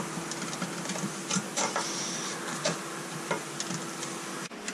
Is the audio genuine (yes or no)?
yes